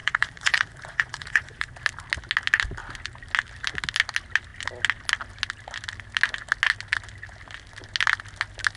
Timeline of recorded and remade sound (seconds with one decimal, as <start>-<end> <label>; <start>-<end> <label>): 0.0-1.7 remade; 1.7-8.8 recorded

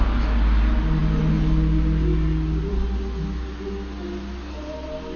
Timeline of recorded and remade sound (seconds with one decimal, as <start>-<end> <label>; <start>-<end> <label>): 0.0-5.2 recorded

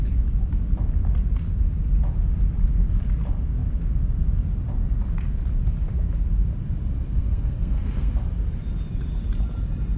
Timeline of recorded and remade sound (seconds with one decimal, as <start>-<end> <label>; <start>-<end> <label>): 0.0-7.2 recorded; 7.2-8.1 remade; 8.1-10.0 recorded

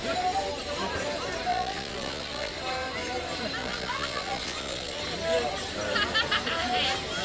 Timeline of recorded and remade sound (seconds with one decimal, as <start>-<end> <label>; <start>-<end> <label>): 0.0-1.5 recorded; 1.5-2.5 remade; 2.5-3.6 recorded; 3.6-5.0 remade; 5.0-7.2 recorded

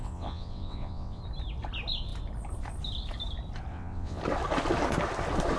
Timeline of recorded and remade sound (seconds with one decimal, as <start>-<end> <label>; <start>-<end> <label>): 0.0-1.2 remade; 1.2-3.7 recorded; 3.7-4.2 remade; 4.2-5.6 recorded

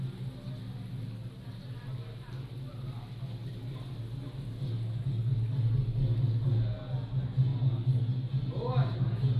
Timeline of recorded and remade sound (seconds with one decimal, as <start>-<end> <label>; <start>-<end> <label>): 0.0-9.4 recorded